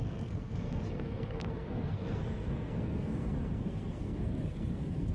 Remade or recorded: remade